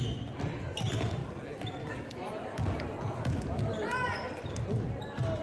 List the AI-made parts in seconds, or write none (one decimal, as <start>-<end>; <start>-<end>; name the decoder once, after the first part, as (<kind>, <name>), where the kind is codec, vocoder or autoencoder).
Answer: none